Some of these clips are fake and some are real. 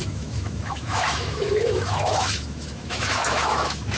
fake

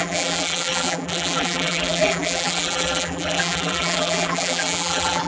fake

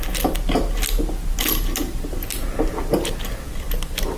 real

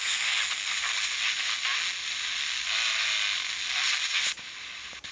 real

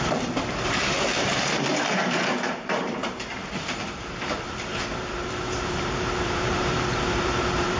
fake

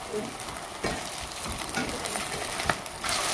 real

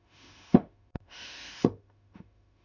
fake